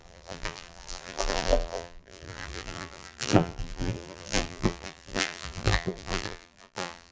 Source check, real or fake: fake